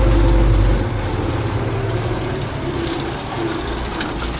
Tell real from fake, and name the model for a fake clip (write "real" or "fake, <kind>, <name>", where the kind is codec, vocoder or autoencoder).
real